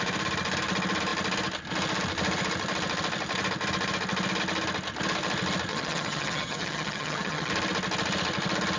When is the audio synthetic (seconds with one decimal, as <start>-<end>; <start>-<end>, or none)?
5.7-7.5